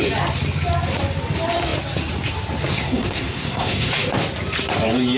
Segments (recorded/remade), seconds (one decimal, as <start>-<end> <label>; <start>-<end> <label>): 0.0-2.7 recorded; 2.7-3.9 remade; 3.9-5.2 recorded